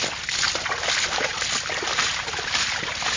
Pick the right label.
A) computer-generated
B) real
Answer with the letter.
B